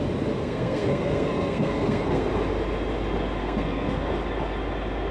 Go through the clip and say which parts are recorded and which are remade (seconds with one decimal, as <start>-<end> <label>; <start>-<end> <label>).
0.0-0.4 recorded; 0.4-2.3 remade; 2.3-3.4 recorded; 3.4-4.1 remade; 4.1-5.1 recorded